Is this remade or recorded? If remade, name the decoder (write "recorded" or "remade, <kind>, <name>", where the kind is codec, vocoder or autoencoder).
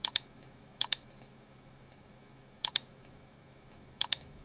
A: remade, autoencoder, DAC-VAE